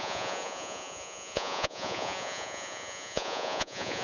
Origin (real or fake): fake